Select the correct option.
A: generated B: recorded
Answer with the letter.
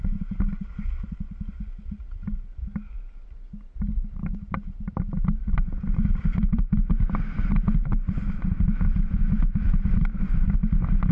B